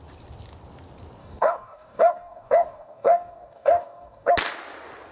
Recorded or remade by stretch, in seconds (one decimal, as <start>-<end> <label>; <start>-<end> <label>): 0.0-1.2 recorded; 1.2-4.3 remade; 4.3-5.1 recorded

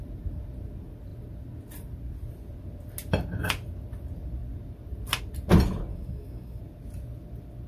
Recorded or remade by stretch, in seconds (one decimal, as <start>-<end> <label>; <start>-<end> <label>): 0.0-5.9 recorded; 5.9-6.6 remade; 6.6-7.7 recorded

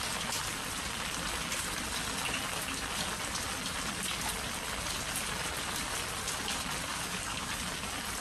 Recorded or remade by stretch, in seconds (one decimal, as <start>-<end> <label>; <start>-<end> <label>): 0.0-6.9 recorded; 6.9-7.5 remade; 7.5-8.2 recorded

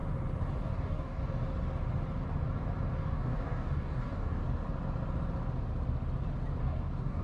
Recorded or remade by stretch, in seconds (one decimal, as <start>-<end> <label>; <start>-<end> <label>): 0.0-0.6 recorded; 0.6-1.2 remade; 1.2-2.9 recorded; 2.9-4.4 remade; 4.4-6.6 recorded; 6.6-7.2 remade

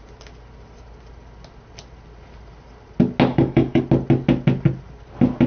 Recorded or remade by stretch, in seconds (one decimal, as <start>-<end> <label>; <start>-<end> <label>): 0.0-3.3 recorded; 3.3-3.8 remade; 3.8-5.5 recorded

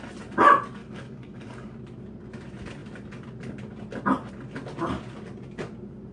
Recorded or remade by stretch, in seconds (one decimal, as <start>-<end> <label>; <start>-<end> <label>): 0.0-0.8 recorded; 0.8-1.8 remade; 1.8-6.1 recorded

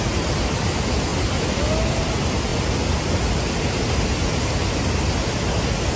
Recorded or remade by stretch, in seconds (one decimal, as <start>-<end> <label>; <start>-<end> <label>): 0.0-6.0 recorded